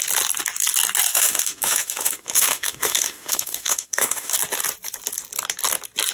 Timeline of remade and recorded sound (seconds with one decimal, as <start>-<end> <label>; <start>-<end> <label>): 0.0-1.1 recorded; 1.1-4.3 remade; 4.3-6.1 recorded